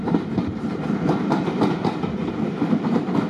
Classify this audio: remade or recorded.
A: recorded